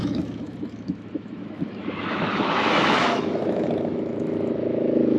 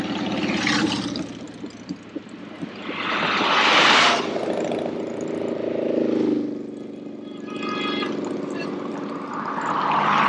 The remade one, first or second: first